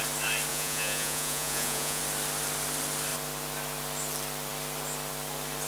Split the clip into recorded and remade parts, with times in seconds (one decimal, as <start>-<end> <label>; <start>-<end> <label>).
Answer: 0.0-0.5 recorded; 0.5-2.0 remade; 2.0-5.7 recorded